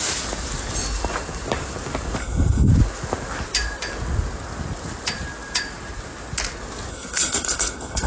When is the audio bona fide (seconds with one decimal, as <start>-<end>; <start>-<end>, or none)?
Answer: 0.0-2.2; 2.7-6.9